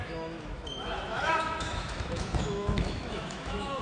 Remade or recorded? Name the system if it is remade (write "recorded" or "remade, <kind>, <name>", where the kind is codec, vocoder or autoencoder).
remade, autoencoder, DAC-VAE